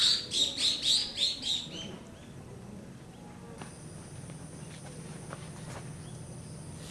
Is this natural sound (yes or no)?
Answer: yes